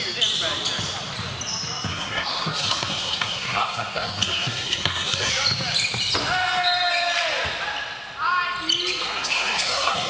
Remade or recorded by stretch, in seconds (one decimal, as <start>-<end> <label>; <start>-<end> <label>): 0.0-1.9 recorded; 1.9-5.3 remade; 5.3-9.0 recorded; 9.0-10.1 remade